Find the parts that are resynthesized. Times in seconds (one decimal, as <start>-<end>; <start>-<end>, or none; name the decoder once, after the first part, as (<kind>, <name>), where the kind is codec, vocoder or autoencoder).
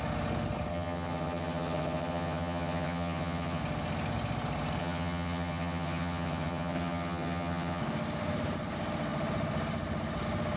0.7-3.6 (vocoder, HiFi-GAN); 4.8-7.8